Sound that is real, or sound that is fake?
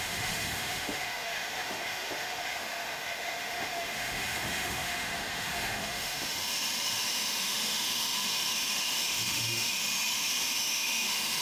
fake